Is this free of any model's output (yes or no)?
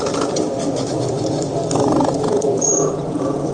yes